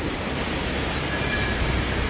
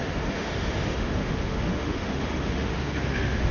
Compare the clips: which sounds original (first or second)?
first